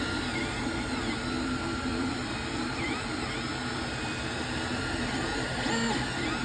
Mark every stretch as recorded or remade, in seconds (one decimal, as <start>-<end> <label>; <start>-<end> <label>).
0.0-1.9 recorded; 1.9-5.3 remade; 5.3-6.4 recorded